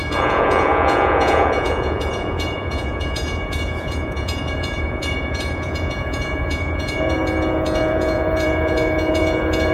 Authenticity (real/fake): fake